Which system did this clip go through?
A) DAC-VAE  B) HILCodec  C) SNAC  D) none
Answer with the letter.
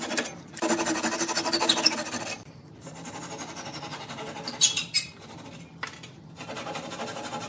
D